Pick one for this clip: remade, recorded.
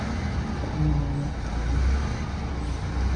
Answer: recorded